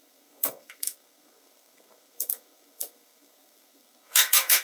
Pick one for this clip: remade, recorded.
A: remade